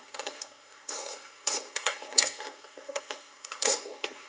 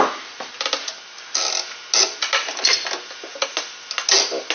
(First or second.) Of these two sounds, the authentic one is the second